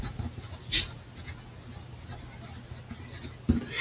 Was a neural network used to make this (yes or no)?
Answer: no